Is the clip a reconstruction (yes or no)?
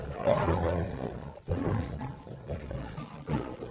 yes